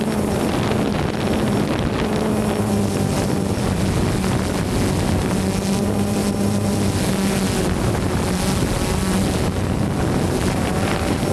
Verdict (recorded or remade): recorded